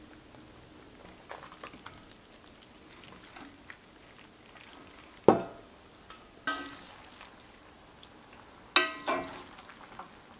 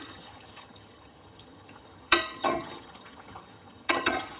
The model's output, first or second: second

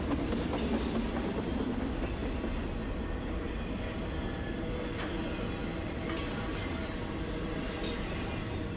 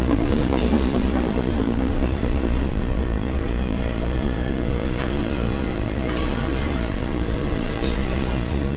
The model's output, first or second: second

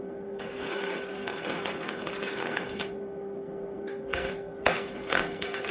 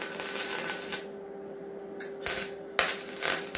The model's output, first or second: first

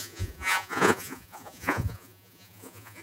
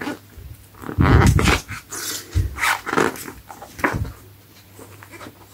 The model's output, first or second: first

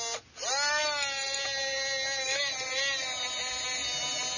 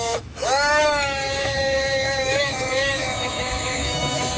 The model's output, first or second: second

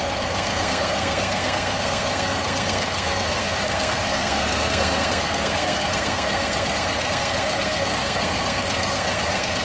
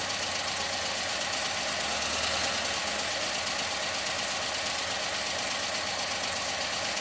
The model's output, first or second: first